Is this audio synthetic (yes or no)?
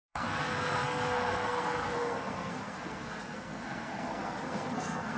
yes